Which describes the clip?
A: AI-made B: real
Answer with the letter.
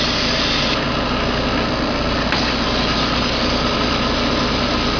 B